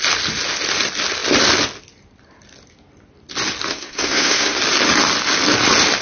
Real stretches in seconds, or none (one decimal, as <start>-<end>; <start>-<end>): 0.0-3.7; 4.6-6.0